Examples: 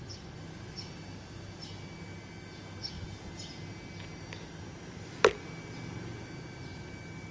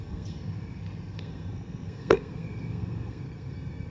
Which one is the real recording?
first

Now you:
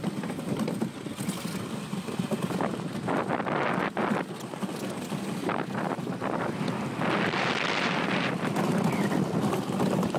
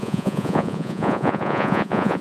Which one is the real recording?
first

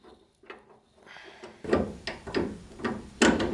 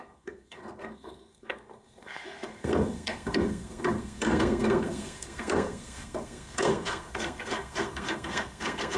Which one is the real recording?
first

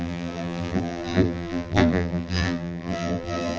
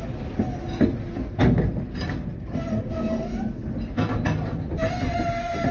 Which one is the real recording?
second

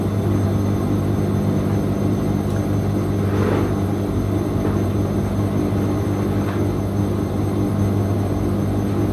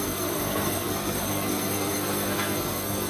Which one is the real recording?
first